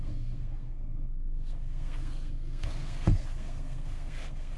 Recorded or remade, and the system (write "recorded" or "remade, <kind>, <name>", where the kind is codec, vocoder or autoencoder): remade, codec, SNAC